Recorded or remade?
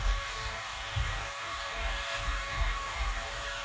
remade